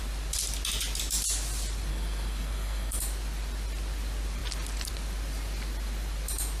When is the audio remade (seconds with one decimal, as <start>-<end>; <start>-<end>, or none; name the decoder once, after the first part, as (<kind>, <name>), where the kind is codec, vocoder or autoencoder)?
1.9-3.0 (codec, SNAC)